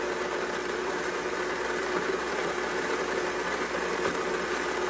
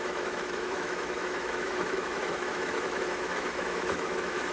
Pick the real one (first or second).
first